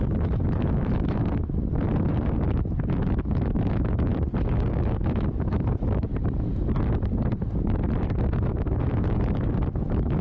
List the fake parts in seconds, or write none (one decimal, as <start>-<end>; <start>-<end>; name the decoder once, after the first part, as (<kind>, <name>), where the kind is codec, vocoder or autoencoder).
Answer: 0.0-4.1 (autoencoder, DAC-VAE); 4.7-6.1; 8.3-10.2